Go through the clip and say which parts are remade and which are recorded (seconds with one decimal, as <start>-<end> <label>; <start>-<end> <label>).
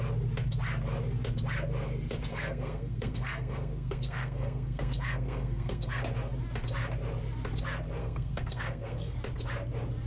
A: 0.0-2.3 recorded; 2.3-6.0 remade; 6.0-8.0 recorded; 8.0-9.2 remade; 9.2-10.1 recorded